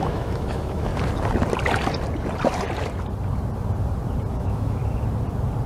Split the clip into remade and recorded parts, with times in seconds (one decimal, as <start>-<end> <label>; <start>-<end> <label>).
0.0-0.9 remade; 0.9-4.3 recorded; 4.3-4.8 remade; 4.8-5.7 recorded